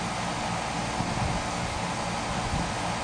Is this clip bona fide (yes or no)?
yes